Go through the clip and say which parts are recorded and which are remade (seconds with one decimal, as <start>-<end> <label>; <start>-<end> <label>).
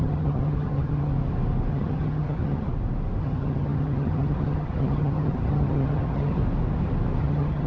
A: 0.0-1.1 remade; 1.1-1.7 recorded; 1.7-2.7 remade; 2.7-3.2 recorded; 3.2-6.4 remade; 6.4-7.2 recorded; 7.2-7.7 remade